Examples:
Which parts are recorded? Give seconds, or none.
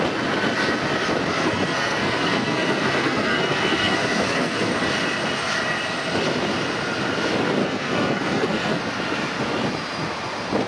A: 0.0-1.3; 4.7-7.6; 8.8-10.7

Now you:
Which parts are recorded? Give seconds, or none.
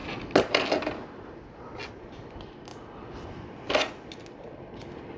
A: 0.0-5.2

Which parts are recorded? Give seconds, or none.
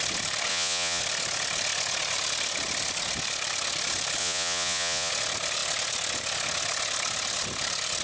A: 0.0-0.5; 1.0-4.2; 5.1-8.0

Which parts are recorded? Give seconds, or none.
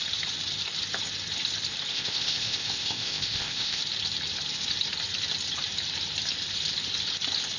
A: 0.0-1.9; 3.8-7.6